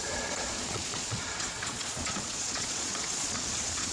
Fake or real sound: fake